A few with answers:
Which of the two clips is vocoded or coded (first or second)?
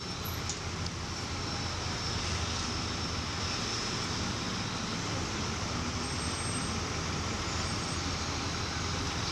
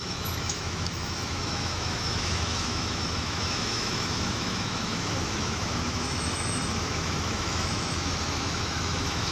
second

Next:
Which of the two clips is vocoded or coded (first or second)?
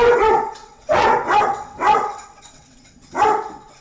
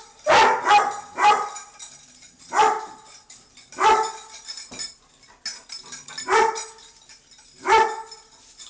first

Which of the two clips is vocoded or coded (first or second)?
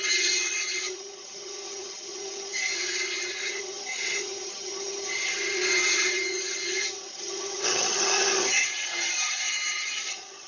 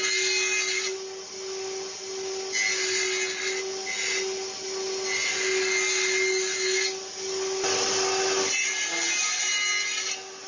first